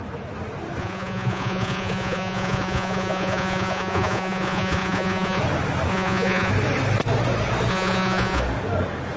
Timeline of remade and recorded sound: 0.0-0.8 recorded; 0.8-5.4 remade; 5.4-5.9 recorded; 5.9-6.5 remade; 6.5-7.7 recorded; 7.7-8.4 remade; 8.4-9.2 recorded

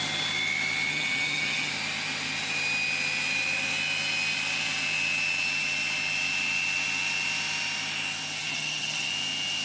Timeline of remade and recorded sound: 0.0-0.9 recorded; 0.9-1.7 remade; 1.7-8.4 recorded; 8.4-9.1 remade; 9.1-9.6 recorded

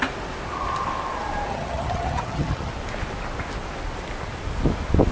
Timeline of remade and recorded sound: 0.0-1.5 recorded; 1.5-2.7 remade; 2.7-5.1 recorded

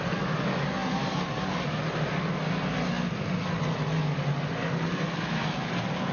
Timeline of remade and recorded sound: 0.0-6.1 recorded

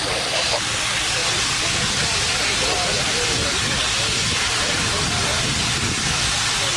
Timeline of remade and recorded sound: 0.0-1.2 remade; 1.2-3.0 recorded; 3.0-6.8 remade

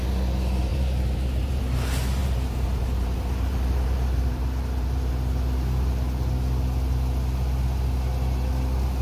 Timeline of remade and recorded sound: 0.0-0.7 recorded; 0.7-1.6 remade; 1.6-2.2 recorded; 2.2-5.1 remade; 5.1-9.0 recorded